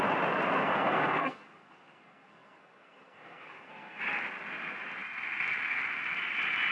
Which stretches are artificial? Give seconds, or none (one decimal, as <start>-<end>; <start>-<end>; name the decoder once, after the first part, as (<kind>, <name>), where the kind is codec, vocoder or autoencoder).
0.6-4.0 (codec, SNAC)